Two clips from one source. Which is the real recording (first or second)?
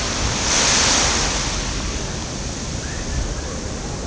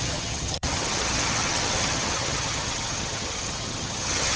first